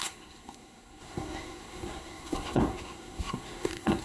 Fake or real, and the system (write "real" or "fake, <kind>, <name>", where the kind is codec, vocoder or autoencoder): fake, codec, SNAC